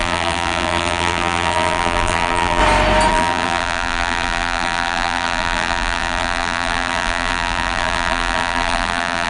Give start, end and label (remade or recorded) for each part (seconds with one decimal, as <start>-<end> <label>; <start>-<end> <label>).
0.0-2.6 remade; 2.6-3.1 recorded; 3.1-9.3 remade